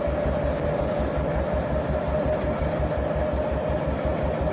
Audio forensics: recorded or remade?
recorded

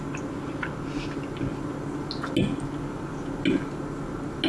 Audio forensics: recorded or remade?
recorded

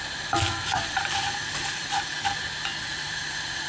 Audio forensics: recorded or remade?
remade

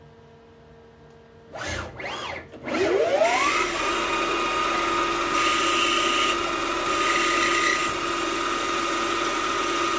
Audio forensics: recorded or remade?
recorded